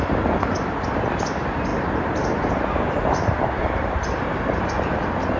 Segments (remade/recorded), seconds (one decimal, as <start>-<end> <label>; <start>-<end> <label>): 0.0-1.7 recorded; 1.7-4.6 remade; 4.6-5.4 recorded